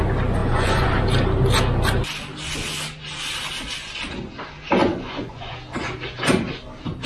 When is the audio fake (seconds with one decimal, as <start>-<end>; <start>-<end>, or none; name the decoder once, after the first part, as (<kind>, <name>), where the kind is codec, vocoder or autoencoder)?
0.4-0.9 (vocoder, Vocos); 4.8-5.5